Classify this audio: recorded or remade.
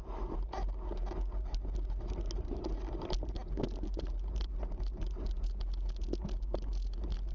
recorded